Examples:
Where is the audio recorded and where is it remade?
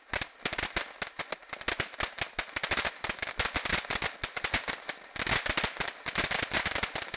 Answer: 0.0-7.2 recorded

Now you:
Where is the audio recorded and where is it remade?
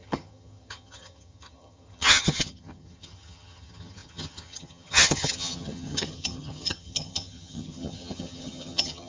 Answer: 0.0-9.1 remade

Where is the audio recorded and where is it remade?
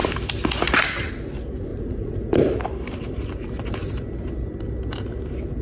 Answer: 0.0-1.7 recorded; 1.7-2.4 remade; 2.4-5.6 recorded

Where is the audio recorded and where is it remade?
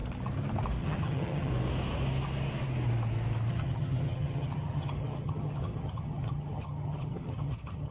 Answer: 0.0-0.8 recorded; 0.8-1.5 remade; 1.5-3.5 recorded; 3.5-7.9 remade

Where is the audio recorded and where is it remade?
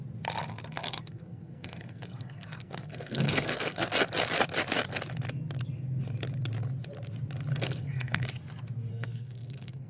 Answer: 0.0-0.6 recorded; 0.6-3.9 remade; 3.9-7.5 recorded; 7.5-8.3 remade; 8.3-8.9 recorded; 8.9-9.9 remade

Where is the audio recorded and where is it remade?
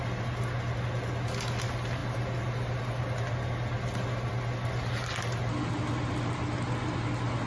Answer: 0.0-7.5 recorded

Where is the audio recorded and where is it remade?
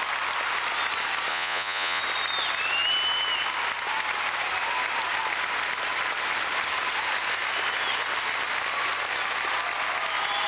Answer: 0.0-1.3 recorded; 1.3-2.0 remade; 2.0-10.5 recorded